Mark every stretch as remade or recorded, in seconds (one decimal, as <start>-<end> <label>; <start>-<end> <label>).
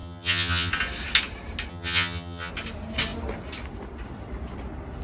0.0-0.7 remade; 0.7-1.7 recorded; 1.7-2.5 remade; 2.5-5.0 recorded